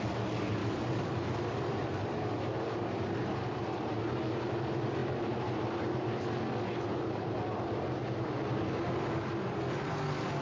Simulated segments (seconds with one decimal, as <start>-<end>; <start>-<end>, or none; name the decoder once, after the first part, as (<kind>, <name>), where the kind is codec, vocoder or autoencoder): 0.6-4.2 (vocoder, BigVGAN v2); 5.0-6.3; 8.0-8.8

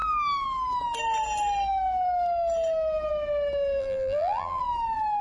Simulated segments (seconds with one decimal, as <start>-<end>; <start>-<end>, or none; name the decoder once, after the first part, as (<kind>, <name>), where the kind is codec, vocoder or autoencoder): 3.8-4.6 (vocoder, BigVGAN v2)

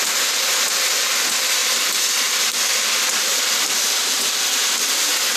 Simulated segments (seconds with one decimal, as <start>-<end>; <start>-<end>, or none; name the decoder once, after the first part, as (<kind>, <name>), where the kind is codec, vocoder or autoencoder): none

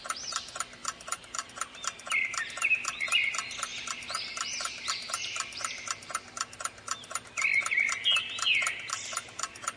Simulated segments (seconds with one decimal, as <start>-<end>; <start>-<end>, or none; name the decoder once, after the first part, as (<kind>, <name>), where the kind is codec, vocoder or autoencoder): 0.8-1.5 (vocoder, BigVGAN v2); 3.7-4.9

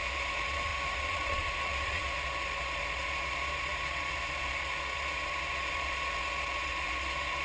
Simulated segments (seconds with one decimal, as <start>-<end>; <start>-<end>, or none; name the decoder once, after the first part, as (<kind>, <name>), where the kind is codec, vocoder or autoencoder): 0.0-7.4 (vocoder, Vocos)

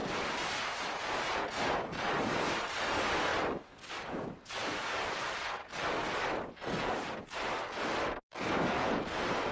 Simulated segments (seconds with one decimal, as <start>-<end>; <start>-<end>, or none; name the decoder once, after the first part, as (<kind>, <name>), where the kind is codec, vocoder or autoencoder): none